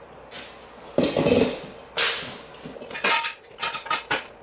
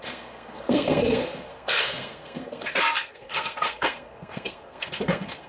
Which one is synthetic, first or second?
second